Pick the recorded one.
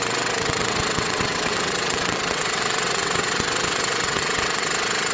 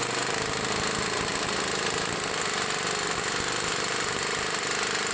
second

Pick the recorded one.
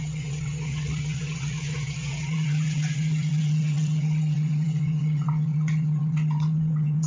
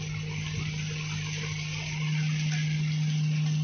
second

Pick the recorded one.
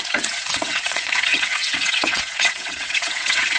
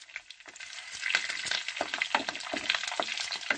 second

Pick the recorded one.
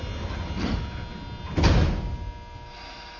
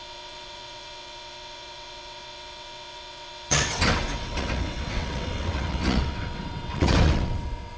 first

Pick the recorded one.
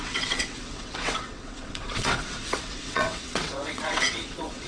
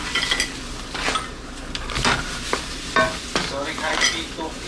second